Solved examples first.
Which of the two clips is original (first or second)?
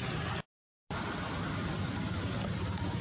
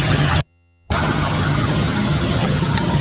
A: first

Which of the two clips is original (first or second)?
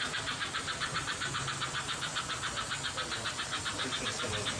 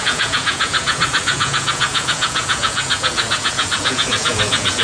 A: first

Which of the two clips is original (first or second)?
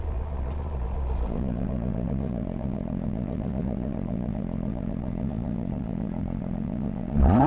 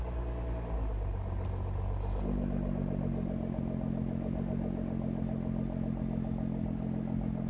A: second